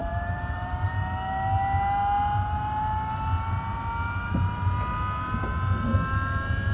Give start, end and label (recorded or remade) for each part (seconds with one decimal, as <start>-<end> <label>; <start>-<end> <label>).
0.0-0.9 remade; 0.9-6.7 recorded